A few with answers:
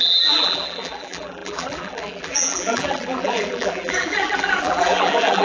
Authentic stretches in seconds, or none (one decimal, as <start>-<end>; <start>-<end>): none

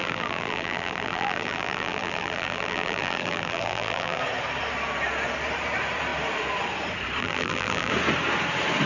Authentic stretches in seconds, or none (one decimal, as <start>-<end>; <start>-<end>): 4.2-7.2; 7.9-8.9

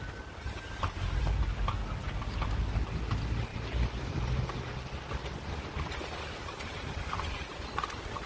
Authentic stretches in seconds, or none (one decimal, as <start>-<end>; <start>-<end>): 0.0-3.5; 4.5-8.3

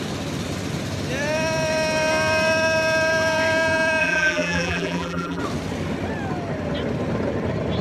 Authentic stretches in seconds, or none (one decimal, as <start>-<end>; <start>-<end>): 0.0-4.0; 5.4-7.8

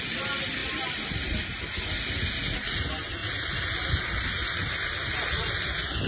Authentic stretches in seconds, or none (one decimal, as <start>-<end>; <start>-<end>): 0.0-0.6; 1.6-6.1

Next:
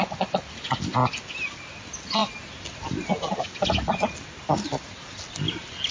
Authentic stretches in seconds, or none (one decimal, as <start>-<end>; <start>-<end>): 0.0-5.9

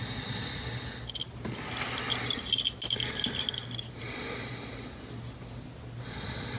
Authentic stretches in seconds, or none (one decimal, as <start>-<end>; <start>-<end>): 0.0-3.6; 4.5-6.6

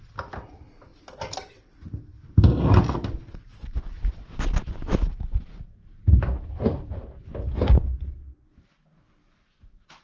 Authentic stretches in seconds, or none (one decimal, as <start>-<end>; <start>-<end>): 0.0-10.0